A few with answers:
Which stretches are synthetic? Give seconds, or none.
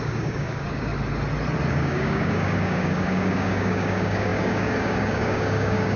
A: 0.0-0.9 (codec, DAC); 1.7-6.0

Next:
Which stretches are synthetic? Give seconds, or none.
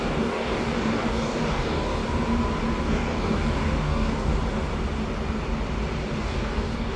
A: 0.0-2.0 (codec, DAC); 2.8-4.3; 6.2-7.0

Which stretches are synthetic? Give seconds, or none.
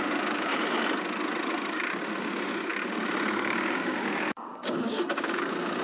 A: 0.0-0.5 (codec, DAC); 2.2-2.7; 3.3-5.8